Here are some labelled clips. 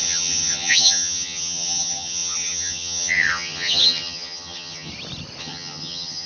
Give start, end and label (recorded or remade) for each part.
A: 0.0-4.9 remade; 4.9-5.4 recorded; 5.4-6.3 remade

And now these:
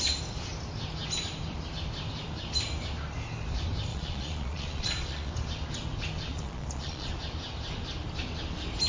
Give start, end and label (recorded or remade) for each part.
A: 0.0-3.9 recorded; 3.9-5.3 remade; 5.3-6.3 recorded; 6.3-7.1 remade; 7.1-8.9 recorded

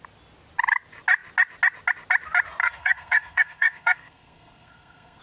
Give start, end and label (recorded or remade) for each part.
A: 0.0-2.6 recorded; 2.6-5.2 remade

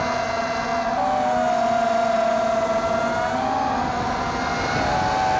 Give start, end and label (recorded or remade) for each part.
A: 0.0-5.4 recorded

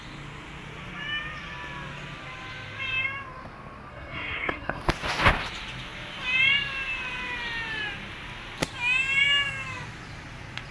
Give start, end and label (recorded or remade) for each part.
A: 0.0-3.9 recorded; 3.9-4.8 remade; 4.8-10.7 recorded